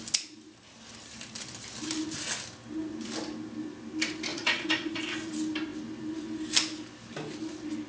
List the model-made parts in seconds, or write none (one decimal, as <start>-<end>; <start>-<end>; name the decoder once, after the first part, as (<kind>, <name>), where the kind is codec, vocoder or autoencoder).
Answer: 4.3-5.0 (vocoder, Vocos)